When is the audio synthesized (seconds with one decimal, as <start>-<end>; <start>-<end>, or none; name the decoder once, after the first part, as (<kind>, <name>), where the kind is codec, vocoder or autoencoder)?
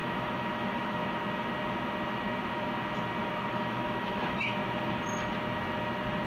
0.0-1.0 (autoencoder, DAC-VAE); 3.5-4.6